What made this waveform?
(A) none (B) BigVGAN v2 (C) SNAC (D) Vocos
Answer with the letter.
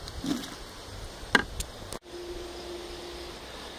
A